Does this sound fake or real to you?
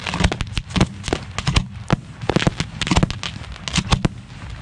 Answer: real